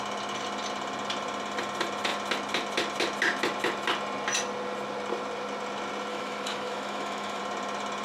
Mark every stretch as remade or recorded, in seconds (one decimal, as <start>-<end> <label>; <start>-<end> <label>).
0.0-6.1 recorded; 6.1-7.4 remade; 7.4-8.0 recorded